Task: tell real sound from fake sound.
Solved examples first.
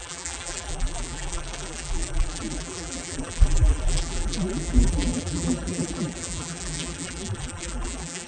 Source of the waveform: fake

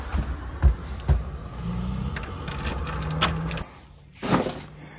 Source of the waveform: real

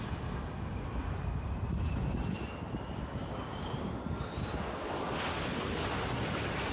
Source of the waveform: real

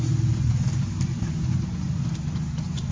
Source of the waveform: real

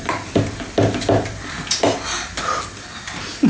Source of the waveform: real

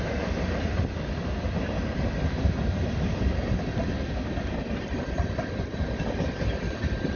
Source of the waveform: fake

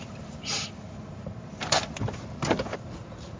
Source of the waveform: fake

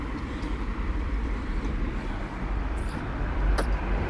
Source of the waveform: fake